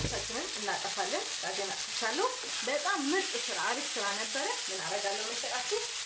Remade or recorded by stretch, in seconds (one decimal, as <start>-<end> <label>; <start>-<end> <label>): 0.0-6.1 recorded